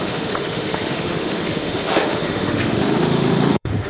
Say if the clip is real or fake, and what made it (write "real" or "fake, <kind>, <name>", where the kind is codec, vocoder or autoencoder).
fake, autoencoder, DAC-VAE